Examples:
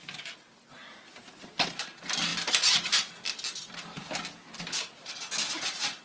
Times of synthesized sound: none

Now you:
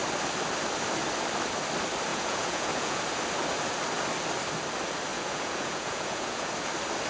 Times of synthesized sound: 2.1-3.0; 5.1-6.5